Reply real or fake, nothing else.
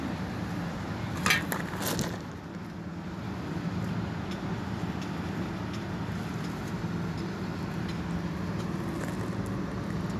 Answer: real